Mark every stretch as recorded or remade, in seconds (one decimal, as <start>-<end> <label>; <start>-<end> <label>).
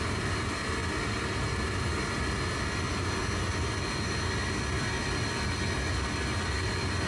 0.0-3.2 recorded; 3.2-3.8 remade; 3.8-7.1 recorded